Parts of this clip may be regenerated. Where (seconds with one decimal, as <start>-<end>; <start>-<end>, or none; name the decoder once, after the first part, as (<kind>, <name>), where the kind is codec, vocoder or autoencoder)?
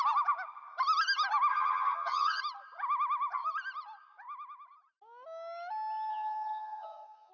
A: 1.5-2.4 (vocoder, HiFi-GAN); 6.1-7.3